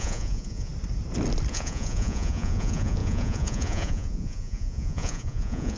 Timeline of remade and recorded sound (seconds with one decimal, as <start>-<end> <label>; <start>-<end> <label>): 0.0-0.7 remade; 0.7-1.5 recorded; 1.5-5.8 remade